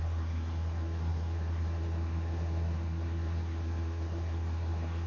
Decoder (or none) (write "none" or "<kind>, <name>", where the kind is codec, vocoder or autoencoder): codec, SNAC